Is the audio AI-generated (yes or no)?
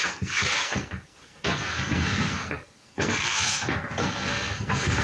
yes